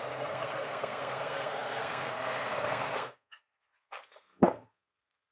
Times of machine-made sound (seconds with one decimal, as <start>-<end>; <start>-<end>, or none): 0.0-5.3